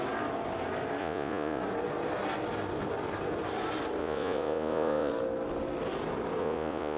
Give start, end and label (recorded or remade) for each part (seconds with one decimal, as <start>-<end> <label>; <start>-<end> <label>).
0.0-1.0 recorded; 1.0-1.6 remade; 1.6-4.0 recorded; 4.0-5.1 remade; 5.1-6.4 recorded; 6.4-7.0 remade